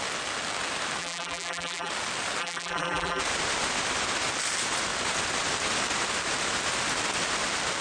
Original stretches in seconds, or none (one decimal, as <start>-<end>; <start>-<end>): 0.0-1.0; 1.9-2.4; 3.2-7.8